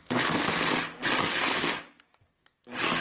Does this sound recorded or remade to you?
recorded